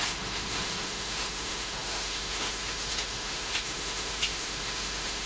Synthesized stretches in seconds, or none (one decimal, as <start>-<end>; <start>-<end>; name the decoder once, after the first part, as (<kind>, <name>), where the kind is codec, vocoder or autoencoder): 0.0-5.3 (autoencoder, DAC-VAE)